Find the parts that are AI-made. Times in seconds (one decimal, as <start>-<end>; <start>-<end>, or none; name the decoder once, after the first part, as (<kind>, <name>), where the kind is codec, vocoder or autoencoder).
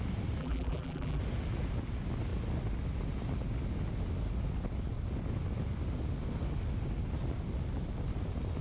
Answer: 0.4-1.2 (vocoder, BigVGAN v2)